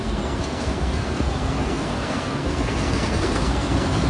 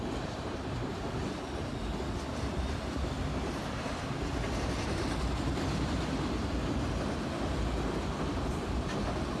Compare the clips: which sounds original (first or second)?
second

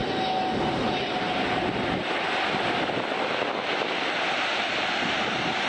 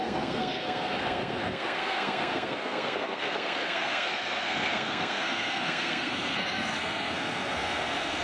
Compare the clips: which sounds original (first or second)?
first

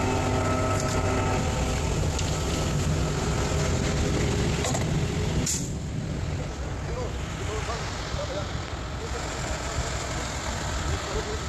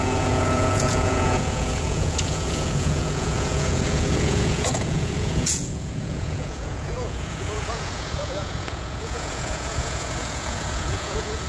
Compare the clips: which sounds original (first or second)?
first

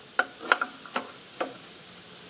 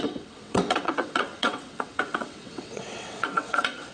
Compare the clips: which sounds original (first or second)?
first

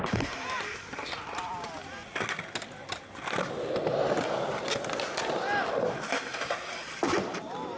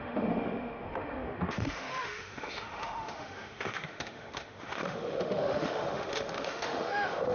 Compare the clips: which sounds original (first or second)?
first